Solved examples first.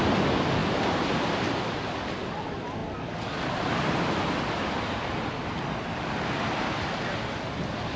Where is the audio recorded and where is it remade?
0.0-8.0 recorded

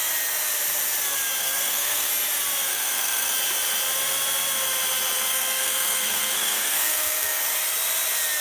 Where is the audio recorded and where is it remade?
0.0-1.4 recorded; 1.4-2.1 remade; 2.1-2.7 recorded; 2.7-3.3 remade; 3.3-5.3 recorded; 5.3-7.4 remade; 7.4-8.4 recorded

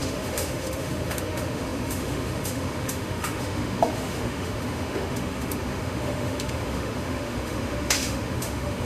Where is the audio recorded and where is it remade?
0.0-8.9 remade